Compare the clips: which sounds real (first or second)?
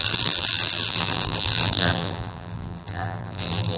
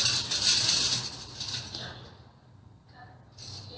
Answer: second